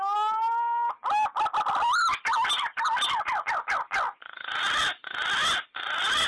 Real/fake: real